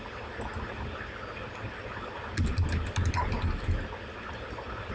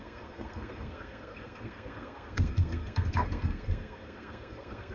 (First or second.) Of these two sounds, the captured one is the first